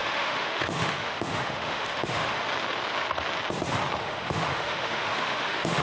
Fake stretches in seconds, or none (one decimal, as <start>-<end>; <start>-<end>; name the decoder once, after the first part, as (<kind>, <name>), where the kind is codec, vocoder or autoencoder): 0.0-2.4 (autoencoder, DAC-VAE); 4.0-5.8